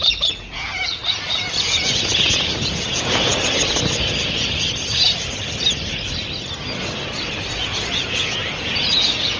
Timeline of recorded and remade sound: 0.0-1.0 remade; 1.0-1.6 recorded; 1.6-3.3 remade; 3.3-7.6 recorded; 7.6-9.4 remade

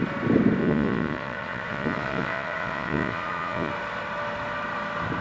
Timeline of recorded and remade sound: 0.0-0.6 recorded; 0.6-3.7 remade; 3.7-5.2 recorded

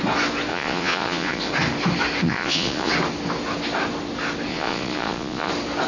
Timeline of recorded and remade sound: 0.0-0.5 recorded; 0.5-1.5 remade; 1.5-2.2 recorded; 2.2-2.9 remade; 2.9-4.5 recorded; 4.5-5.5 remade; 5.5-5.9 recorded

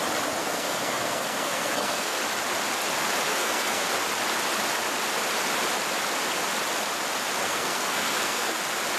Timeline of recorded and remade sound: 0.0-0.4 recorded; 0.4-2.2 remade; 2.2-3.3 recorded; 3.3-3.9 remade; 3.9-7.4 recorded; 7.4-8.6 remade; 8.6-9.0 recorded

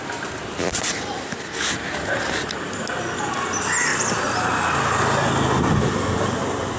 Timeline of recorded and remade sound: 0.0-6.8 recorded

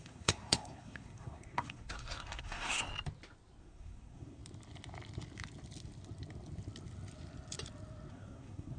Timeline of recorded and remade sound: 0.0-2.9 remade; 2.9-3.6 recorded; 3.6-4.4 remade; 4.4-8.1 recorded; 8.1-8.8 remade

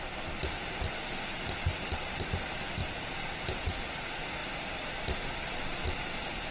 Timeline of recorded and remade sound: 0.0-2.8 recorded; 2.8-3.8 remade; 3.8-6.5 recorded

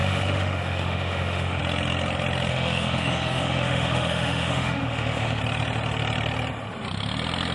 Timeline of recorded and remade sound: 0.0-1.6 remade; 1.6-2.5 recorded; 2.5-5.4 remade; 5.4-7.5 recorded